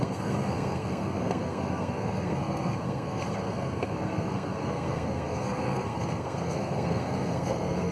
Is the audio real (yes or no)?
no